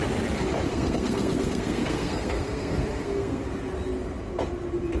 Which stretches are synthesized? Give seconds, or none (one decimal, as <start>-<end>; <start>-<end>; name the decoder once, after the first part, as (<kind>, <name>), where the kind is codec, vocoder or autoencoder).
0.7-3.4 (codec, SNAC)